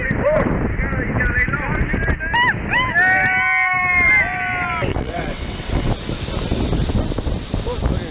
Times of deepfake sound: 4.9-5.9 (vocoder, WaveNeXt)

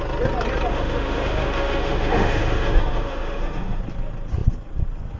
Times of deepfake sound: 0.7-3.8 (autoencoder, DAC-VAE)

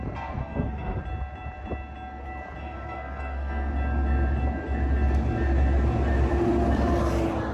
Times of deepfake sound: 0.4-1.0 (codec, SNAC); 2.6-3.7

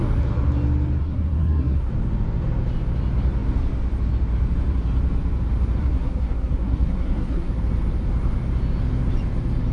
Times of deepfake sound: 1.0-1.9 (codec, SNAC); 5.8-7.5

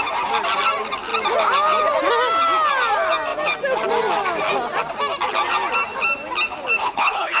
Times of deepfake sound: 6.8-7.4 (codec, HILCodec)

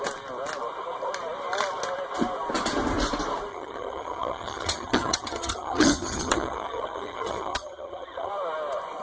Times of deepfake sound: 3.5-8.3 (vocoder, HiFi-GAN)

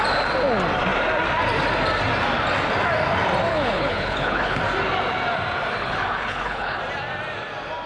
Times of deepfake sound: 3.5-4.6 (codec, HILCodec); 5.7-6.8

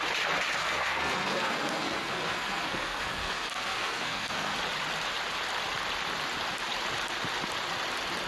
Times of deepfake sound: 0.6-4.5 (codec, SNAC)